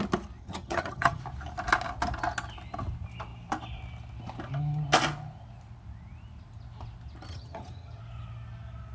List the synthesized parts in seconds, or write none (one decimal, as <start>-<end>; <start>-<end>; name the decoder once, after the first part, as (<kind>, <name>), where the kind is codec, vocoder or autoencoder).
0.4-1.2 (vocoder, HiFi-GAN); 7.3-8.0